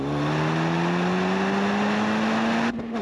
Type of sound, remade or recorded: recorded